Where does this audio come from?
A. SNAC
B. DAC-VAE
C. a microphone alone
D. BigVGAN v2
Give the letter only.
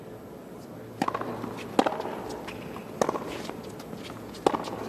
C